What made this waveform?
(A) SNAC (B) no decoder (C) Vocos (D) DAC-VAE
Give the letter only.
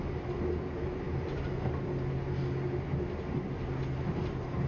B